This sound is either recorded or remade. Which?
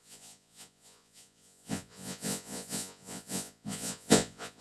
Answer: remade